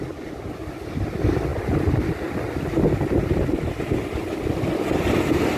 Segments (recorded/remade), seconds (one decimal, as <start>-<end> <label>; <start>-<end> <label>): 0.0-5.6 recorded